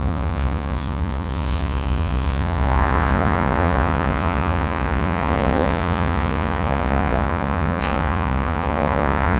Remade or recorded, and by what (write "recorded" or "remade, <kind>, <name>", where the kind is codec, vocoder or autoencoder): remade, vocoder, Vocos